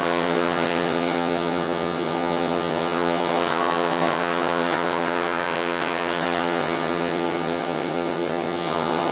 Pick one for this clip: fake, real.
fake